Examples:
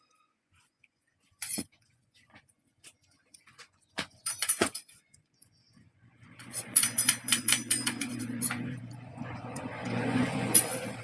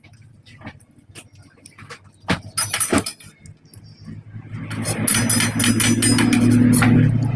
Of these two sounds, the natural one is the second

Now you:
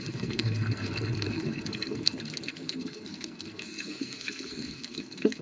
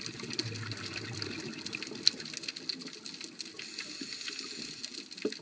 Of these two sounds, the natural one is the second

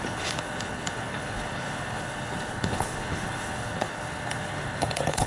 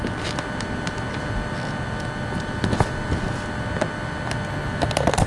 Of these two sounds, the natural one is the second